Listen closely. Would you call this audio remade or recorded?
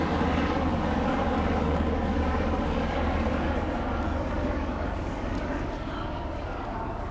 remade